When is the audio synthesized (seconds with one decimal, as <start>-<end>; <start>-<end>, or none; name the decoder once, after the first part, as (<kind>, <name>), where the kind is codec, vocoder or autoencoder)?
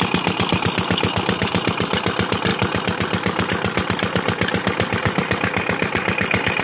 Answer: none